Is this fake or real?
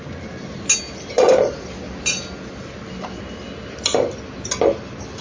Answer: real